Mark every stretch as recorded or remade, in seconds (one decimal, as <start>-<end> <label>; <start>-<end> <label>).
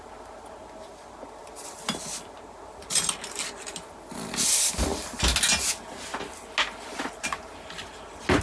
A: 0.0-8.4 recorded